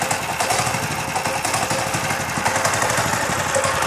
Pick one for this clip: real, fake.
real